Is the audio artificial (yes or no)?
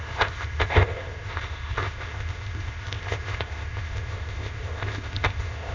yes